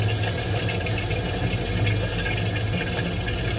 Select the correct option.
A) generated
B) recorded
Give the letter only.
B